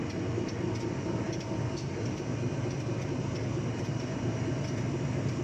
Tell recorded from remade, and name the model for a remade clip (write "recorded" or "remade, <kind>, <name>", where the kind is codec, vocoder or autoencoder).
recorded